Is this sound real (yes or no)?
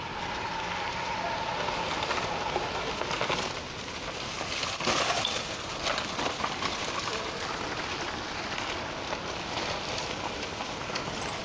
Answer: yes